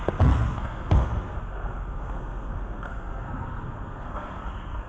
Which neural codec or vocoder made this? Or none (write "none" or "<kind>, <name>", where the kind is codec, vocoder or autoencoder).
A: codec, SNAC